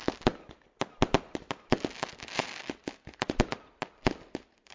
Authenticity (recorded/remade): recorded